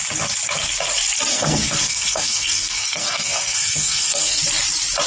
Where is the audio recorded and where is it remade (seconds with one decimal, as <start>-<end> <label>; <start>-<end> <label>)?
0.0-1.3 recorded; 1.3-4.4 remade; 4.4-5.1 recorded

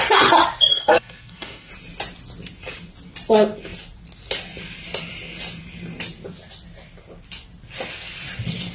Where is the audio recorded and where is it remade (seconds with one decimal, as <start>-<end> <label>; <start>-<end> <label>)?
0.0-0.7 recorded; 0.7-1.7 remade; 1.7-8.7 recorded